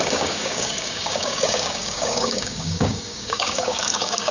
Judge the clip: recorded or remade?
remade